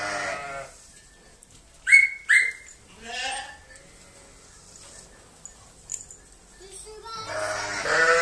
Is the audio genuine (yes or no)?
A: yes